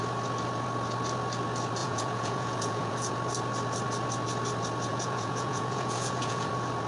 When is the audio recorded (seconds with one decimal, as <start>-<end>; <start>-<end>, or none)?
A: 0.0-1.8; 3.1-4.9; 6.5-6.9